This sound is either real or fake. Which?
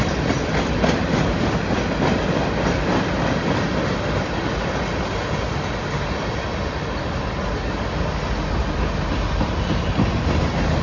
real